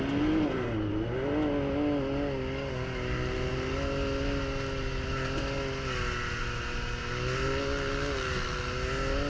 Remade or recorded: recorded